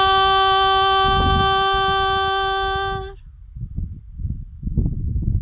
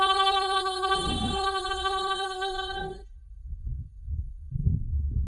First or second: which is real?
first